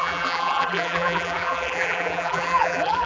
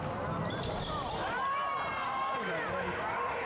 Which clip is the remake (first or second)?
first